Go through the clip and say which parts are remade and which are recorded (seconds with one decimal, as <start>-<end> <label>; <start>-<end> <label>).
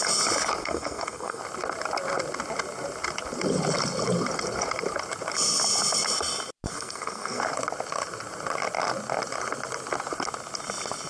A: 0.0-0.6 recorded; 0.6-1.4 remade; 1.4-6.7 recorded; 6.7-7.4 remade; 7.4-11.1 recorded